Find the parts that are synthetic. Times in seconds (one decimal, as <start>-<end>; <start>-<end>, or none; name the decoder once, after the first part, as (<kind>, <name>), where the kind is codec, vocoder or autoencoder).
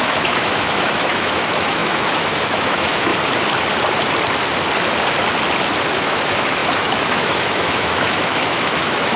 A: 0.0-3.1 (autoencoder, DAC-VAE); 5.9-9.2